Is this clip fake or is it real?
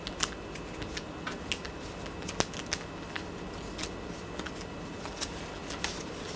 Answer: real